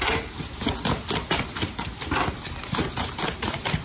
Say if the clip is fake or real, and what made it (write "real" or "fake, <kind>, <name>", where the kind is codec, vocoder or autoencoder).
real